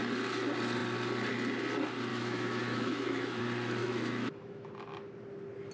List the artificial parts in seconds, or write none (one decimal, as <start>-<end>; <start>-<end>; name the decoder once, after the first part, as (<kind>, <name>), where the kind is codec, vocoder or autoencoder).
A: 2.1-3.4 (autoencoder, DAC-VAE); 3.8-4.7